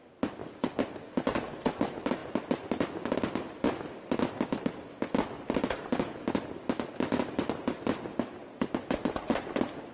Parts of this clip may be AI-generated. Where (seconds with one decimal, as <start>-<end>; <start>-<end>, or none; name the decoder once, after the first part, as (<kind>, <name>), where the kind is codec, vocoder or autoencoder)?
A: none